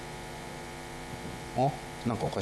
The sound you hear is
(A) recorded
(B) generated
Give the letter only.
B